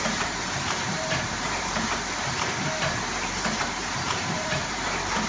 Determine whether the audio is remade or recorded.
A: remade